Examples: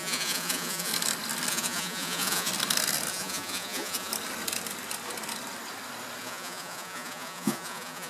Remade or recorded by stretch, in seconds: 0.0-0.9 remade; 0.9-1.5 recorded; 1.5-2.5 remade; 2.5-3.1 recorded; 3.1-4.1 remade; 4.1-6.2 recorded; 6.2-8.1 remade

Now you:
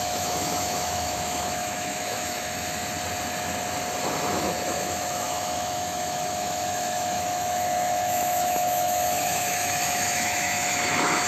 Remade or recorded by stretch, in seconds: 0.0-2.8 remade; 2.8-4.3 recorded; 4.3-11.3 remade

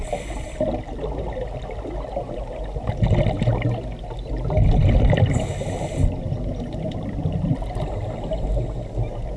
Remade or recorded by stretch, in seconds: 0.0-9.4 recorded